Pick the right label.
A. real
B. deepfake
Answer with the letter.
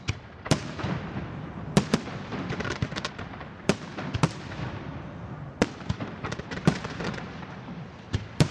B